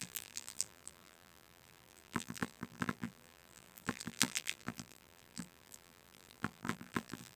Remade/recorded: remade